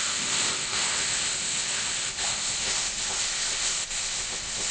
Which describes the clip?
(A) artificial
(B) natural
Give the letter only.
A